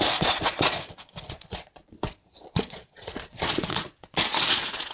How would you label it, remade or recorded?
remade